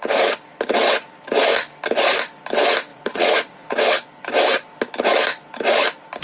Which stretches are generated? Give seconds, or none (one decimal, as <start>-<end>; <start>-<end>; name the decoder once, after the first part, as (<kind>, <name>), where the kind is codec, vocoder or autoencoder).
2.9-3.8 (vocoder, Vocos)